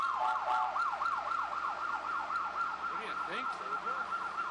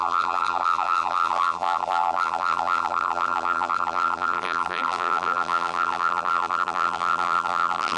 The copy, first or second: second